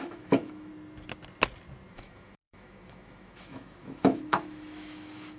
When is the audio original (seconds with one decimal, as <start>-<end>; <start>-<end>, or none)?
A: 0.7-1.9